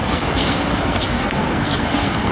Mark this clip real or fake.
fake